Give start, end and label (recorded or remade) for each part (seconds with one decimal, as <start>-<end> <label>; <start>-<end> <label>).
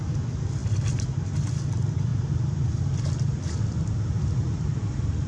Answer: 0.0-5.3 recorded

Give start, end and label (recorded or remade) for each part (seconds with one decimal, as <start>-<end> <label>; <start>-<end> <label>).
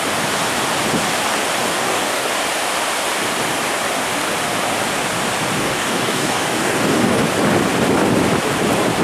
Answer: 0.0-1.6 recorded; 1.6-2.3 remade; 2.3-5.6 recorded; 5.6-7.2 remade; 7.2-9.0 recorded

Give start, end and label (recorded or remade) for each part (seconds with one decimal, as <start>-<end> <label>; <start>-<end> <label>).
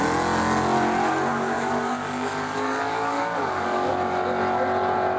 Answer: 0.0-1.3 recorded; 1.3-3.9 remade; 3.9-5.2 recorded